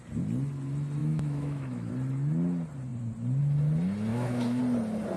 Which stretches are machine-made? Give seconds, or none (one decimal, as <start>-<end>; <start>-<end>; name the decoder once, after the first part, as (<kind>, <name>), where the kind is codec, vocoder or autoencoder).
1.0-1.9 (autoencoder, DAC-VAE); 4.1-4.6